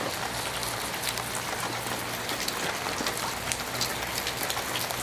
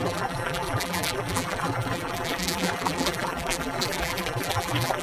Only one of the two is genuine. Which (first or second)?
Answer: first